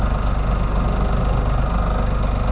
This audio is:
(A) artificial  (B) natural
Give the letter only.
B